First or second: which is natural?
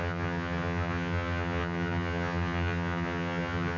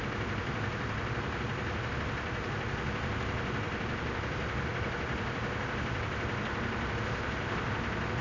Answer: second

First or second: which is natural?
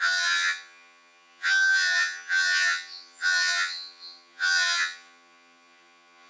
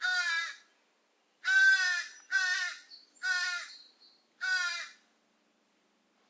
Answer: second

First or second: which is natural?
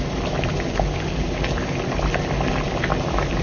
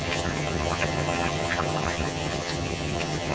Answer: first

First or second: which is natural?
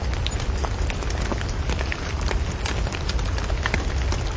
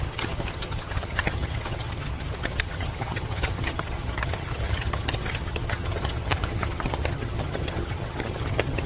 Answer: first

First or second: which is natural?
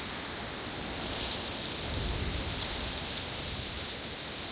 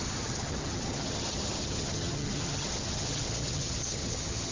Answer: first